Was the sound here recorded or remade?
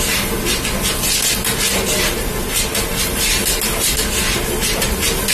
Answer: recorded